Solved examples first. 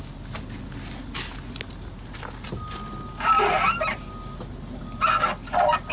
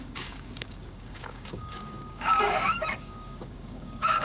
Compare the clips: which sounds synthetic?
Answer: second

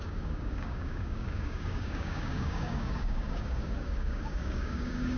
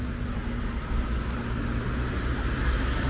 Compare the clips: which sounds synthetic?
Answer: first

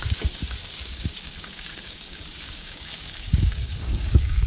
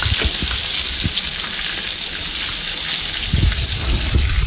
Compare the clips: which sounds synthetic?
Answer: first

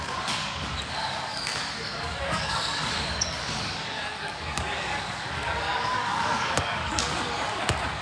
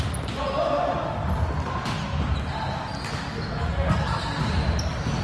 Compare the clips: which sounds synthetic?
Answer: first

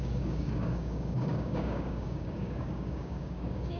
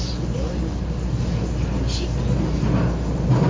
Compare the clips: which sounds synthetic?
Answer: first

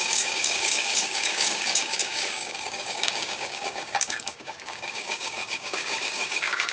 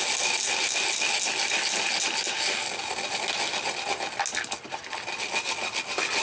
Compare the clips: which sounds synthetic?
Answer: first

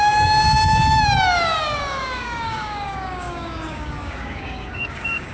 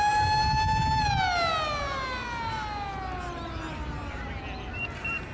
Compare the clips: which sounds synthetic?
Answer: first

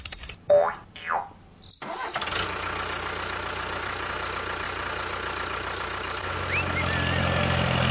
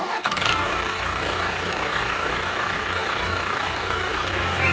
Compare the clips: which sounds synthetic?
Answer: second